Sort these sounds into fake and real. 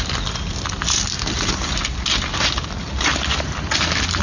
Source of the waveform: real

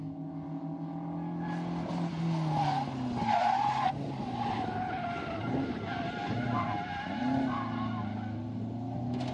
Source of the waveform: real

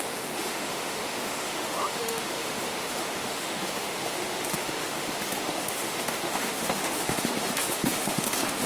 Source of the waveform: fake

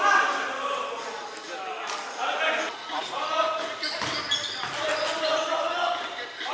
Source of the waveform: real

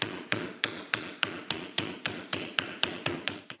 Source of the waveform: fake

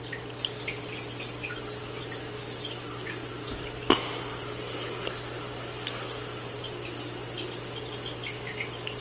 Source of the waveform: real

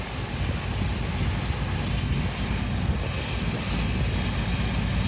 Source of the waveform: real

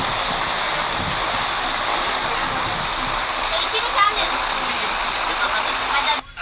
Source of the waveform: real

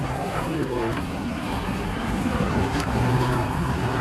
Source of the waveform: fake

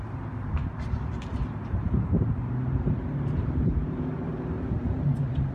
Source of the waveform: fake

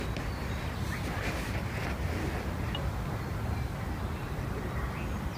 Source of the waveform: real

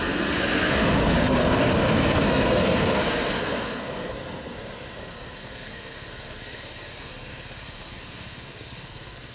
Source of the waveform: fake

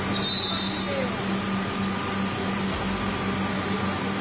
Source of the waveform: real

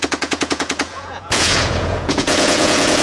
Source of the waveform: fake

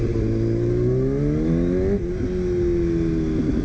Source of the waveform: real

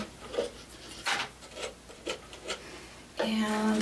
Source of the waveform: real